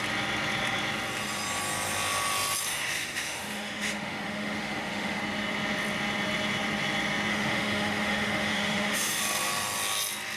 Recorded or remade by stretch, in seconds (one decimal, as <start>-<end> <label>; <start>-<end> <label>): 0.0-2.7 recorded; 2.7-5.2 remade; 5.2-7.3 recorded; 7.3-9.2 remade; 9.2-10.4 recorded